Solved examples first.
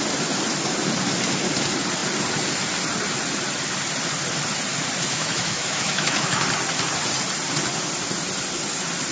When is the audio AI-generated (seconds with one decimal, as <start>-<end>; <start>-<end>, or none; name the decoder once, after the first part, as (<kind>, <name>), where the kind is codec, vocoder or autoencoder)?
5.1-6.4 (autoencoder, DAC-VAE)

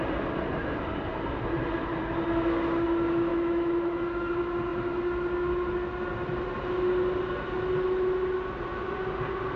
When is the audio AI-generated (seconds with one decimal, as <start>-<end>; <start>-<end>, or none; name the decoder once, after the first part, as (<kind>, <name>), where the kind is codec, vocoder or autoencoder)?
3.3-4.3 (autoencoder, DAC-VAE)

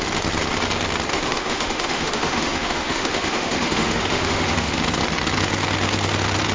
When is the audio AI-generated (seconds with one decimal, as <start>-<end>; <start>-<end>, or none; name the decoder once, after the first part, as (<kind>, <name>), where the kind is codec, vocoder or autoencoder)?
1.1-4.8 (autoencoder, DAC-VAE)

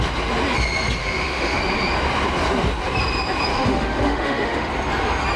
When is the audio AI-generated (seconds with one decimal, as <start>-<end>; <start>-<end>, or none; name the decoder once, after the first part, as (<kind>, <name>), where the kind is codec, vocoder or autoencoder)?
1.0-1.6 (autoencoder, DAC-VAE); 3.5-4.7

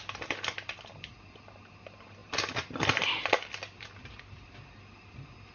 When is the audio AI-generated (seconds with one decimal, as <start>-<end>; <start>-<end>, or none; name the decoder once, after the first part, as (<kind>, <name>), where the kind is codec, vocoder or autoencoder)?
none

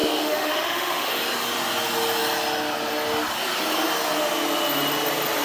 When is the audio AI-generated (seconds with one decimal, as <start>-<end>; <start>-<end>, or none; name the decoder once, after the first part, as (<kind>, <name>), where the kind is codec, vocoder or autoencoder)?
0.0-1.1 (autoencoder, DAC-VAE)